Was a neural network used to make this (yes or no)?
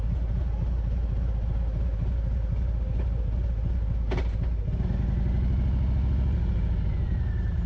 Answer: no